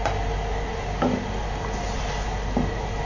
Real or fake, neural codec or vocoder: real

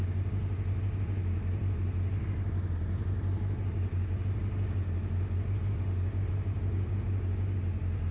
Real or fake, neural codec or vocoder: real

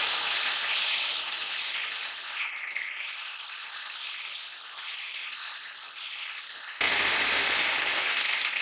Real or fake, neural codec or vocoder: real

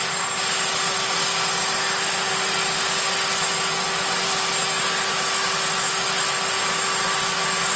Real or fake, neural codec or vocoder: real